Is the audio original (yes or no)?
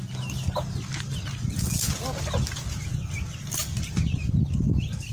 yes